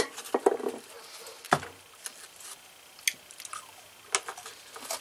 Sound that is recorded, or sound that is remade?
recorded